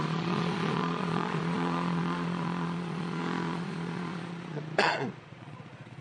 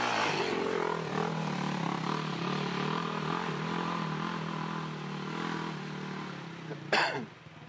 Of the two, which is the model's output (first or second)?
first